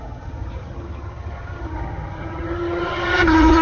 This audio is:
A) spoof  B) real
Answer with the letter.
A